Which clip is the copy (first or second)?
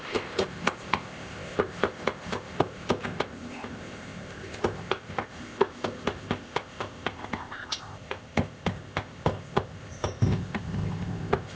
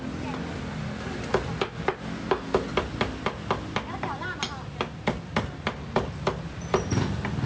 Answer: first